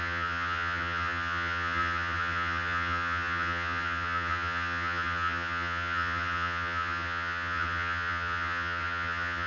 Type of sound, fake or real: fake